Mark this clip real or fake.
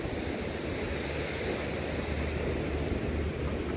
real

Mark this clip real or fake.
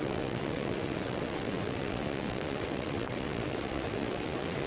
fake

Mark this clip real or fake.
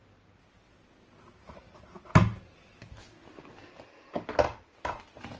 real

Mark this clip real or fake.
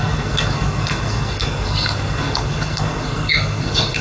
fake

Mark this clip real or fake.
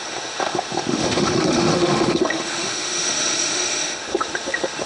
fake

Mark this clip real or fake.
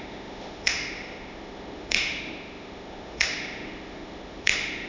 fake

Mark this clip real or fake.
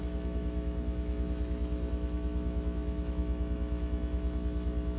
fake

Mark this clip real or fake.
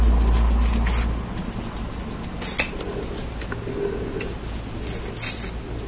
real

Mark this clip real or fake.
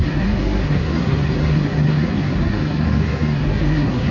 fake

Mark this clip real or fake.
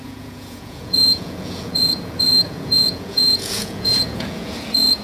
fake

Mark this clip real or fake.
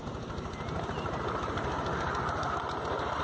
real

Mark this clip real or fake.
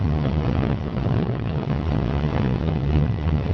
fake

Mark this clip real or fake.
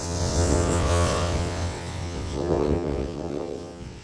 fake